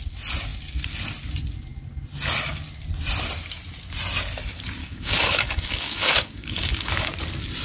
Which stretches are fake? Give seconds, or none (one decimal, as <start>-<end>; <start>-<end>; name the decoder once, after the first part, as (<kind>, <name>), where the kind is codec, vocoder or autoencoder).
4.8-7.1 (codec, DAC)